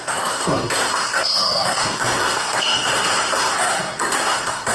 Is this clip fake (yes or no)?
yes